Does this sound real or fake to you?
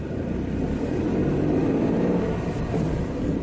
real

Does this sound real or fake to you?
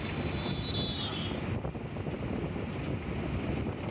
real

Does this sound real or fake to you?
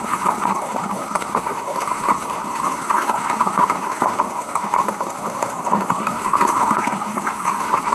fake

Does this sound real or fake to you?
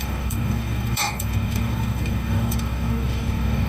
fake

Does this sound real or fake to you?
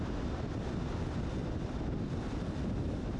real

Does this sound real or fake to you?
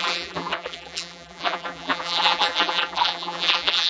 fake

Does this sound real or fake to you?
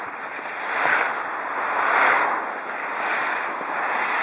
real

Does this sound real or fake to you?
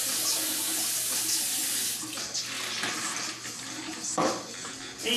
real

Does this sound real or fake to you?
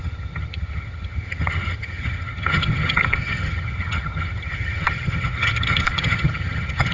fake